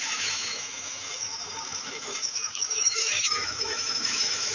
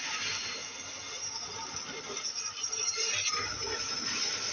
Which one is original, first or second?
second